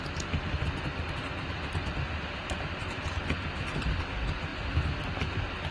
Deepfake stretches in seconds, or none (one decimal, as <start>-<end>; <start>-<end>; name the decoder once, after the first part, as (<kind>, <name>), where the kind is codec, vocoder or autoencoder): none